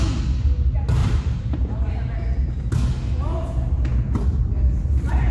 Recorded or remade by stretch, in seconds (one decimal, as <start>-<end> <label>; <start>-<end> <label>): 0.0-1.0 recorded; 1.0-1.9 remade; 1.9-5.3 recorded